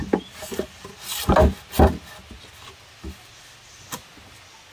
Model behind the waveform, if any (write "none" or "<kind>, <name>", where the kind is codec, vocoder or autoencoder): none